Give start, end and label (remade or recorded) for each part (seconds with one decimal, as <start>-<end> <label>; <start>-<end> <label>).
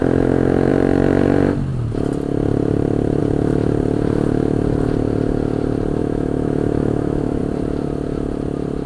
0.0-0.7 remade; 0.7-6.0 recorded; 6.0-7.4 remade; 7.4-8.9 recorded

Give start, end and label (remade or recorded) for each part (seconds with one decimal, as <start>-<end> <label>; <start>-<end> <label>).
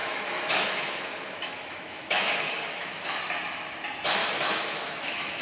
0.0-3.2 remade; 3.2-4.2 recorded; 4.2-5.4 remade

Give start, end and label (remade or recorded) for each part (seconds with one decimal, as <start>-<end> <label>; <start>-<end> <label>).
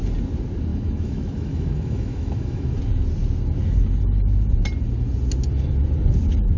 0.0-0.7 recorded; 0.7-2.8 remade; 2.8-6.6 recorded